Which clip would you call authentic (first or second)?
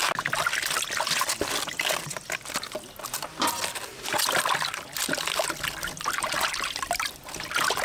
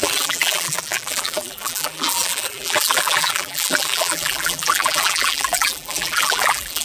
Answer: first